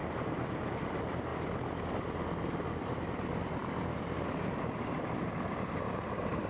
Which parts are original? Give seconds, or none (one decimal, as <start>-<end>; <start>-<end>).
0.0-1.3; 2.4-3.6; 5.3-6.5